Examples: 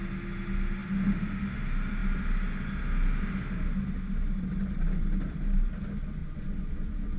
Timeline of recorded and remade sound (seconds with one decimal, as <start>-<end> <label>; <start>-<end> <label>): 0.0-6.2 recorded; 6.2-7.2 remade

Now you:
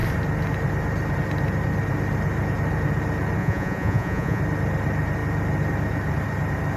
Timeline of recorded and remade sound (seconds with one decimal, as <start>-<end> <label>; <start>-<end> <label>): 0.0-3.4 recorded; 3.4-4.4 remade; 4.4-6.8 recorded

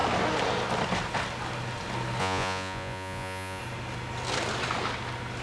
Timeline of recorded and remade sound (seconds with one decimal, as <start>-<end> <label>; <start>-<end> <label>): 0.0-2.2 recorded; 2.2-3.6 remade; 3.6-5.4 recorded

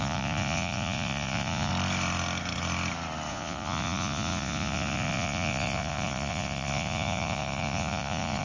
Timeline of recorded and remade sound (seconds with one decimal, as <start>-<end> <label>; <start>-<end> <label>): 0.0-1.7 remade; 1.7-3.3 recorded; 3.3-8.4 remade

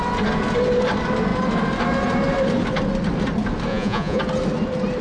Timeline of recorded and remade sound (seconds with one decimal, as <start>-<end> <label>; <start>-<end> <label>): 0.0-3.7 recorded; 3.7-4.2 remade; 4.2-5.0 recorded

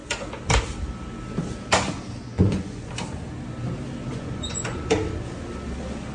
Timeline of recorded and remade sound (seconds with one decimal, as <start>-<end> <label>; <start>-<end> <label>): 0.0-2.3 recorded; 2.3-2.9 remade; 2.9-4.1 recorded; 4.1-4.8 remade; 4.8-6.1 recorded

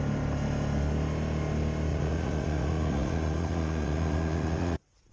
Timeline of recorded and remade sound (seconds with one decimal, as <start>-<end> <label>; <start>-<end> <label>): 0.0-1.9 recorded; 1.9-5.1 remade